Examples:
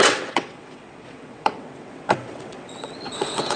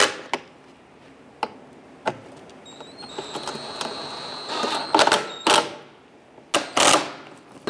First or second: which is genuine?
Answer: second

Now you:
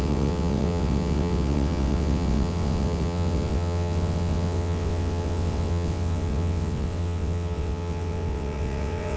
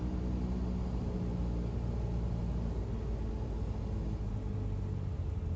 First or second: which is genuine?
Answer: second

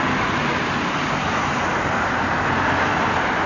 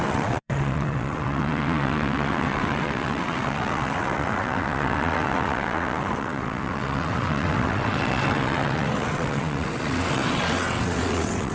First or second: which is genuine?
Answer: first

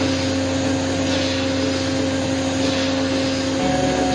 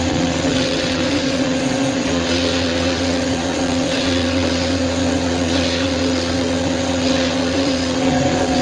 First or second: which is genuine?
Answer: first